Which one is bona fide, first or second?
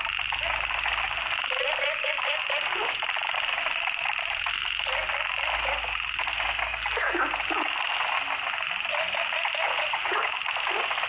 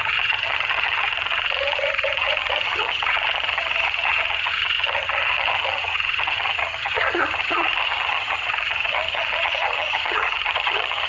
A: first